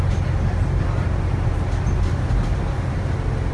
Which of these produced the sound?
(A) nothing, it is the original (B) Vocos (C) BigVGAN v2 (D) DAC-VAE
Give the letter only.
A